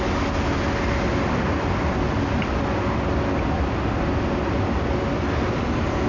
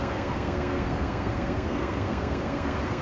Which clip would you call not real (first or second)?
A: second